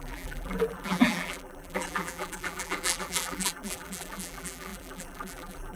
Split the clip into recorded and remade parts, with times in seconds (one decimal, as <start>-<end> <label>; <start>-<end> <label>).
0.0-5.8 remade